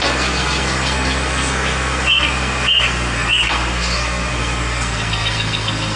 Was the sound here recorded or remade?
remade